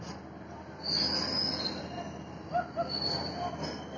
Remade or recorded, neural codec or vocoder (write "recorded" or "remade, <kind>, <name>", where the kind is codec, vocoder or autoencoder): recorded